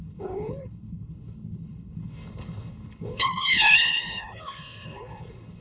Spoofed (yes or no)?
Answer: yes